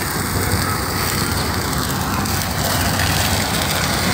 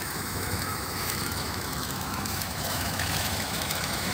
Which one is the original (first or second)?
first